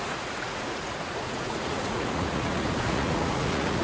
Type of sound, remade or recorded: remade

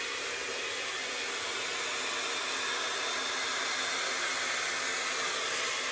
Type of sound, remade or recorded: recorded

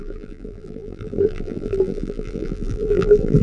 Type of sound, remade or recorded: remade